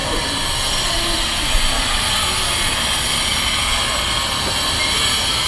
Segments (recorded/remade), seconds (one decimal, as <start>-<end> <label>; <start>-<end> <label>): 0.0-5.5 recorded